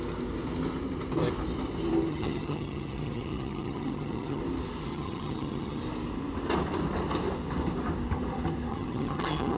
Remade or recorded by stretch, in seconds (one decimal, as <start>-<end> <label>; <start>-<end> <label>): 0.0-2.1 recorded; 2.1-4.4 remade; 4.4-4.9 recorded; 4.9-5.8 remade; 5.8-8.7 recorded; 8.7-9.6 remade